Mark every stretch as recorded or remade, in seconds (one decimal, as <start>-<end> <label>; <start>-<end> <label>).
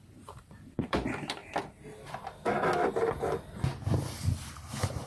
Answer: 0.0-1.4 remade; 1.4-4.5 recorded; 4.5-5.1 remade